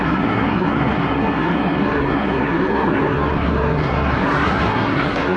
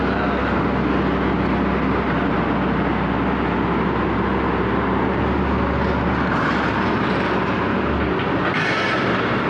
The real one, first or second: second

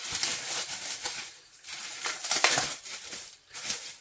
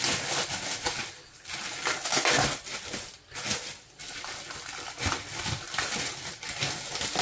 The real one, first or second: second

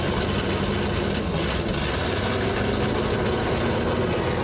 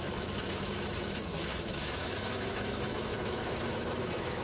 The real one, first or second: first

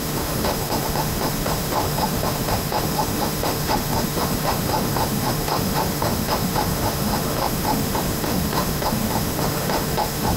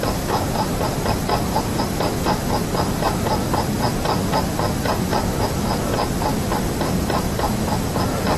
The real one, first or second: second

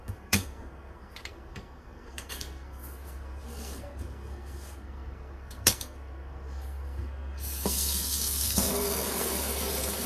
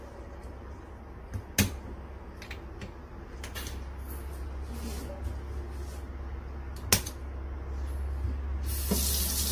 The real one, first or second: second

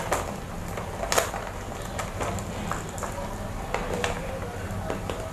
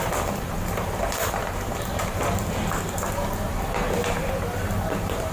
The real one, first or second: first